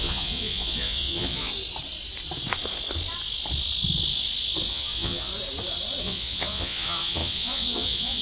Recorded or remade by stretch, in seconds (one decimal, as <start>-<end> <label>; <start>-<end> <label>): 0.0-1.5 remade; 1.5-4.7 recorded; 4.7-5.3 remade; 5.3-6.0 recorded; 6.0-8.2 remade